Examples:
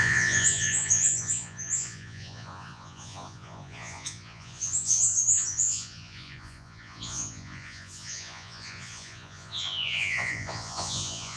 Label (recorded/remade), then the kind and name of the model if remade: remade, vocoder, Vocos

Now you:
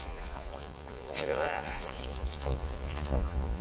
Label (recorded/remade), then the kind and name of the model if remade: remade, vocoder, Vocos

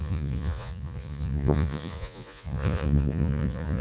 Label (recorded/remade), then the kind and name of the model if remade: remade, vocoder, Vocos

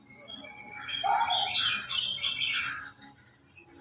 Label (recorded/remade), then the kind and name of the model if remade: recorded